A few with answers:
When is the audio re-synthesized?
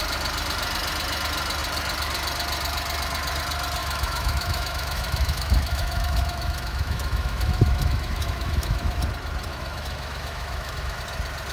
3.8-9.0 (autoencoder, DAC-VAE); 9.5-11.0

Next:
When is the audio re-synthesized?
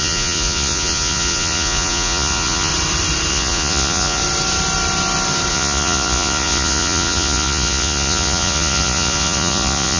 0.0-2.7 (vocoder, Vocos); 3.3-4.2; 5.5-10.0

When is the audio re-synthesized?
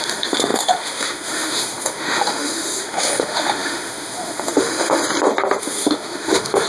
0.0-5.0 (autoencoder, DAC-VAE); 5.6-6.7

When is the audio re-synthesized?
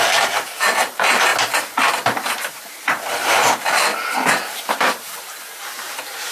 0.0-1.3 (vocoder, BigVGAN v2); 2.5-3.9; 4.7-6.3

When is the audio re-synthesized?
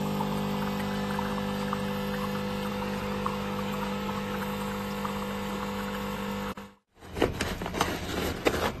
2.7-4.4 (codec, DAC)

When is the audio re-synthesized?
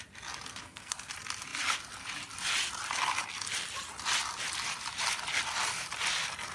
0.5-1.1 (codec, SNAC)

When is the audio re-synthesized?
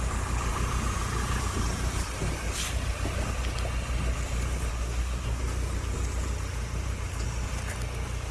4.7-5.4 (codec, SNAC)